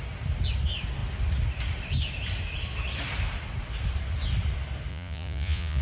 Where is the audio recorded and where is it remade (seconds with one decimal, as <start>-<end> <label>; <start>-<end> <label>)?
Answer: 0.0-4.9 recorded; 4.9-5.8 remade